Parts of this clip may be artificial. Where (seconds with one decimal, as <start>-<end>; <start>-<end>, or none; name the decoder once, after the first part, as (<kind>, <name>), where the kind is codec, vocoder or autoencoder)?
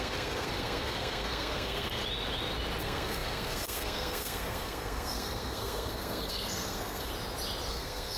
0.0-2.0 (codec, SNAC); 2.8-7.1; 7.7-8.2